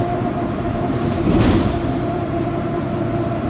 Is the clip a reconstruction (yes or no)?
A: yes